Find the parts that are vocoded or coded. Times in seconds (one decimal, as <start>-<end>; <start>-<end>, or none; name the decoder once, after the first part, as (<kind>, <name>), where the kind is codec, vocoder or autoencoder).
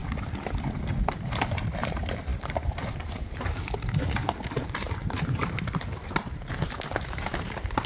1.4-7.9 (vocoder, BigVGAN v2)